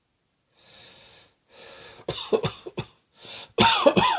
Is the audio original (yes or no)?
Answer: yes